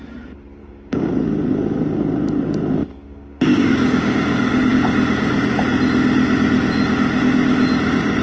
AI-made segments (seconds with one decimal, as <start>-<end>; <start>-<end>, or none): 0.6-1.1; 2.8-4.7

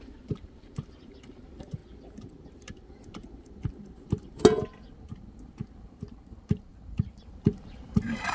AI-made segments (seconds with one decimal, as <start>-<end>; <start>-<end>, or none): 0.0-1.8; 5.8-8.3